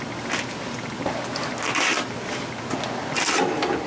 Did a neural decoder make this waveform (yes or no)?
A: no